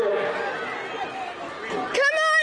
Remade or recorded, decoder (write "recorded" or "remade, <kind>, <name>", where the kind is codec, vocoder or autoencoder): recorded